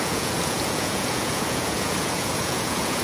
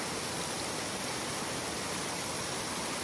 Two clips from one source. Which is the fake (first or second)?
first